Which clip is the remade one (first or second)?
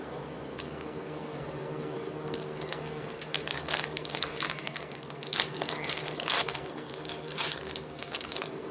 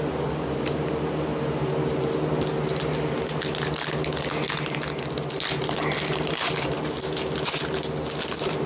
first